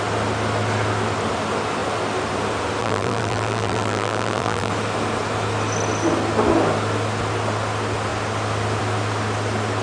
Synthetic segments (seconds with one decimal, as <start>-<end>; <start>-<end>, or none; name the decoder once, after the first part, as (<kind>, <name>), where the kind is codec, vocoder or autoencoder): 2.8-4.7 (vocoder, BigVGAN v2)